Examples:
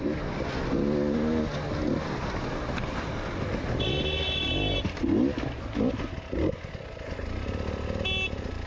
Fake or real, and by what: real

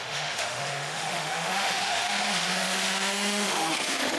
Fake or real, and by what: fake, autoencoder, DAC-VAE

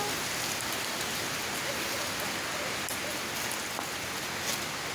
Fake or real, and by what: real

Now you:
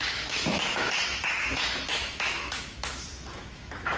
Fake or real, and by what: fake, autoencoder, DAC-VAE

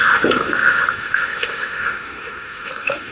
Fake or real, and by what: fake, autoencoder, DAC-VAE